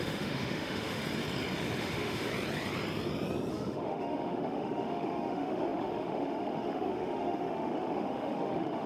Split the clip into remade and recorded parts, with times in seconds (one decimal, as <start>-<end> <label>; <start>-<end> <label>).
0.0-1.0 remade; 1.0-1.8 recorded; 1.8-2.3 remade; 2.3-3.5 recorded; 3.5-8.9 remade